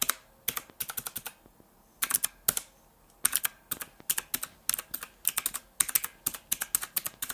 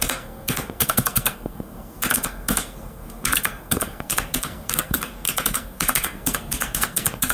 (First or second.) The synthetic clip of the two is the second